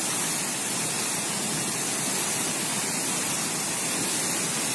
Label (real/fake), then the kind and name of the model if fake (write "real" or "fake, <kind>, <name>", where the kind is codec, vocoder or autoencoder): real